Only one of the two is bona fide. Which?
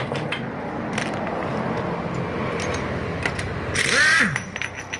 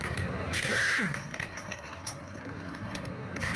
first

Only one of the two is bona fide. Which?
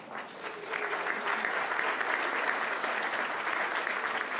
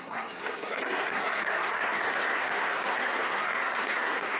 first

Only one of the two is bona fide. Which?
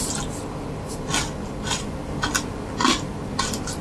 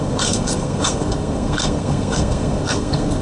first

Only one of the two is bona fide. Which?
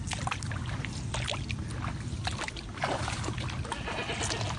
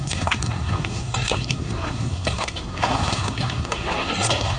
first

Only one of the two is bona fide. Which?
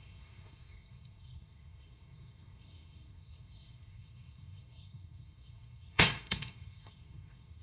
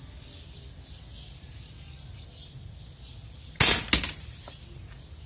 second